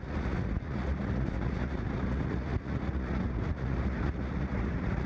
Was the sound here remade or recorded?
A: remade